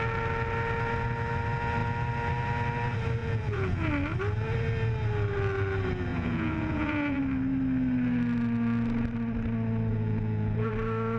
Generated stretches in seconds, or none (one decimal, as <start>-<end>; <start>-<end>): 3.2-3.9; 6.1-7.2; 9.9-10.7